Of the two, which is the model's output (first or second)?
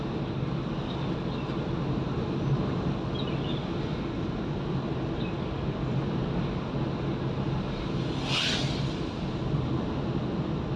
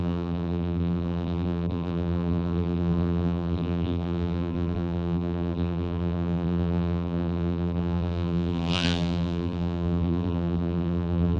second